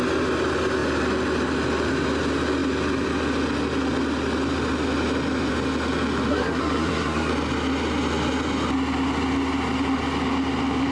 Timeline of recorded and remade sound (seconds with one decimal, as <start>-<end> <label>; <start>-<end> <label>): 0.0-6.3 recorded; 6.3-7.3 remade; 7.3-10.9 recorded